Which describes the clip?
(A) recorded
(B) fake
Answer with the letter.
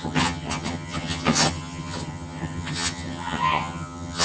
B